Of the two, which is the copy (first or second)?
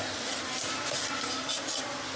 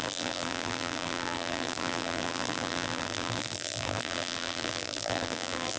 second